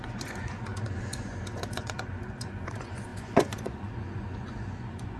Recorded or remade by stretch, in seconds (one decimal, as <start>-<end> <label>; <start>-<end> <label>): 0.0-5.2 remade

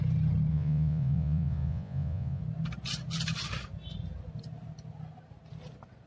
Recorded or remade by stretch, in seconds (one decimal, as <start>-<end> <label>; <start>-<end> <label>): 0.0-0.5 recorded; 0.5-2.4 remade; 2.4-6.1 recorded

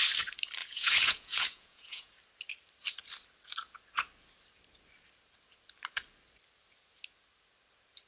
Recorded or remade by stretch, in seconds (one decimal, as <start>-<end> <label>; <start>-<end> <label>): 0.0-0.6 recorded; 0.6-2.1 remade; 2.1-8.1 recorded

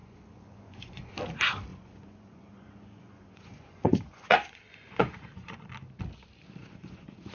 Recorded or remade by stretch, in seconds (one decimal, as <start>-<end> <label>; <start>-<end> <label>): 0.0-1.1 remade; 1.1-1.7 recorded; 1.7-5.7 remade; 5.7-6.6 recorded; 6.6-7.3 remade

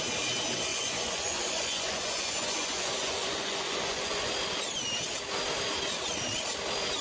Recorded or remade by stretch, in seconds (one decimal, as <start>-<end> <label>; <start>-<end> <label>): 0.0-0.7 recorded; 0.7-4.3 remade; 4.3-7.0 recorded